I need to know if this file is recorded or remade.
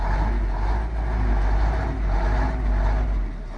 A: recorded